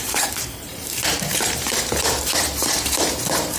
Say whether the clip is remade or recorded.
remade